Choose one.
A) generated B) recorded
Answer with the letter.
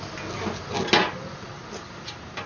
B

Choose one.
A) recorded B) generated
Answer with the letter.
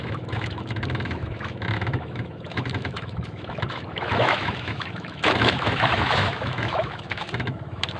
B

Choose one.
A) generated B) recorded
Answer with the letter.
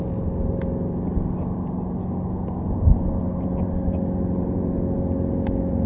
B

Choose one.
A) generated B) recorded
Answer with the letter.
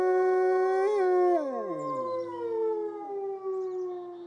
B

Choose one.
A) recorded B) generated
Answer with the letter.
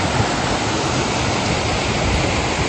A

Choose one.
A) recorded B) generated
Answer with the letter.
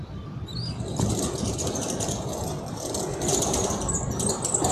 A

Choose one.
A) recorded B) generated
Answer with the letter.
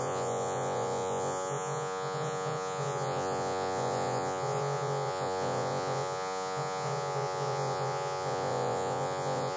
B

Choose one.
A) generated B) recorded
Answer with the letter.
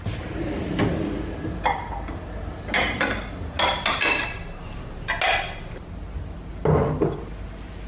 B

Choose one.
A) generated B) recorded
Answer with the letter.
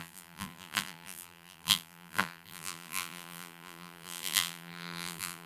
A